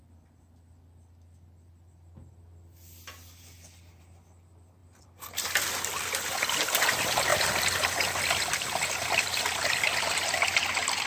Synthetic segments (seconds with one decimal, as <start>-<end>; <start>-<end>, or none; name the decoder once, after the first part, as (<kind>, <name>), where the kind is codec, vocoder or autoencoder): none